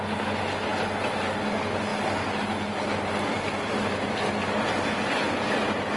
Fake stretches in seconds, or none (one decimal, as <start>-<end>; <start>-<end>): none